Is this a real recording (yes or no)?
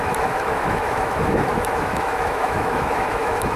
no